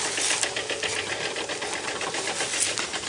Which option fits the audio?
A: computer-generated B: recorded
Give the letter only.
B